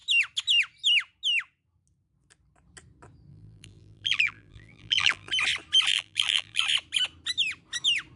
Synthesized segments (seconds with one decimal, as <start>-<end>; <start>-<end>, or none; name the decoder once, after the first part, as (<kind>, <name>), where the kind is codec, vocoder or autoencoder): 3.3-5.3 (vocoder, BigVGAN v2); 5.9-6.6